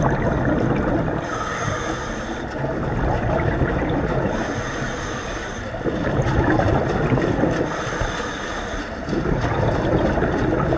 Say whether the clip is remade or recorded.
recorded